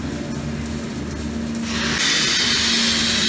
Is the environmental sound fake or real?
real